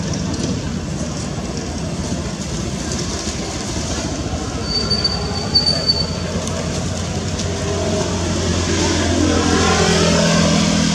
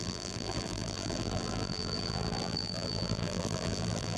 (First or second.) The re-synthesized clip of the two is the second